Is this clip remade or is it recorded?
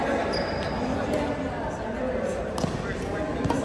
recorded